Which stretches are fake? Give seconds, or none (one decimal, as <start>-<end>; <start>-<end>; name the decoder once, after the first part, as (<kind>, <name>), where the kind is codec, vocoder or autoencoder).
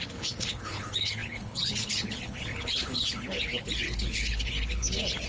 0.0-5.3 (codec, HILCodec)